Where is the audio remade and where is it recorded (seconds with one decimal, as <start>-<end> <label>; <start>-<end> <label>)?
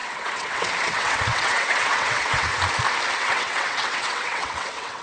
0.0-2.5 remade; 2.5-3.1 recorded; 3.1-5.0 remade